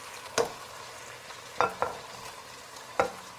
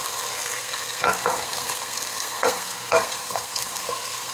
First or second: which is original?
first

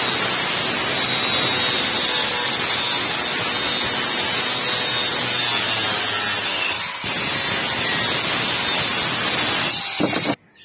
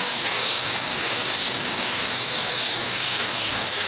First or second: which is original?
first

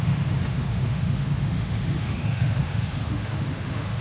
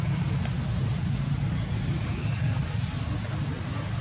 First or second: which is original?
second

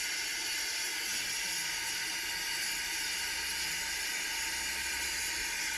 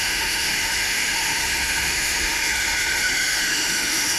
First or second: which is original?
first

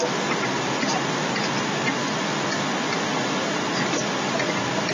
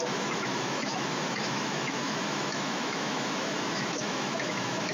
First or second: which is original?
first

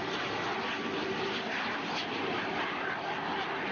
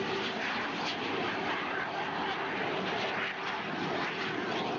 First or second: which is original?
second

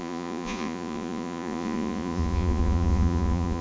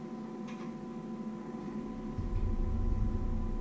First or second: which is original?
second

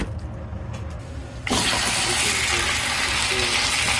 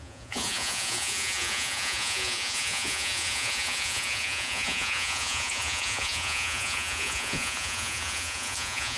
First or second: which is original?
first